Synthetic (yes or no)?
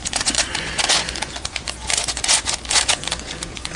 yes